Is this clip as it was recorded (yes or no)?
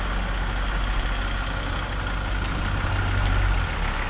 yes